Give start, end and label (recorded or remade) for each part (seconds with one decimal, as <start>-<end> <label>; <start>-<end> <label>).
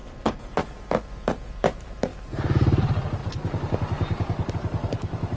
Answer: 0.0-1.6 recorded; 1.6-2.1 remade; 2.1-2.8 recorded; 2.8-3.2 remade; 3.2-4.5 recorded; 4.5-5.4 remade